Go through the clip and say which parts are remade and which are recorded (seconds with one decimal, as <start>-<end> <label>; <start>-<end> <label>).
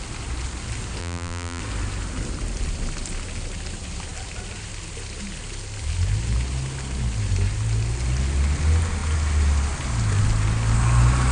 0.0-1.0 recorded; 1.0-1.6 remade; 1.6-11.3 recorded